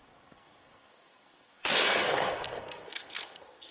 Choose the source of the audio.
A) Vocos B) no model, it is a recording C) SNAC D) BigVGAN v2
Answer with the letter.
C